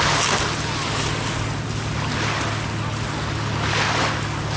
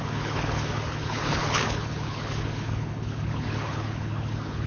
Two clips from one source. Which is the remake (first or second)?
second